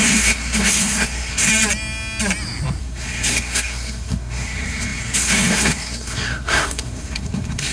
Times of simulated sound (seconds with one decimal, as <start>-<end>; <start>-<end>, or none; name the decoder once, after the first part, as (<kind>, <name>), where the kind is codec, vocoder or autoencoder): 0.0-1.5 (codec, SNAC); 2.8-7.7